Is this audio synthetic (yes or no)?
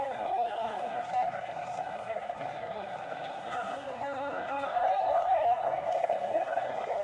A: yes